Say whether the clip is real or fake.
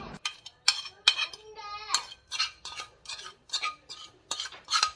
real